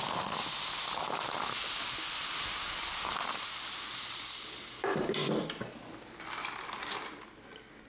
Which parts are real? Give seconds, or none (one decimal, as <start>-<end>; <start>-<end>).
0.0-2.2; 5.4-7.9